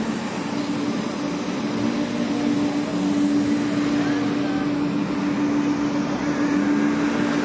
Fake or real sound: real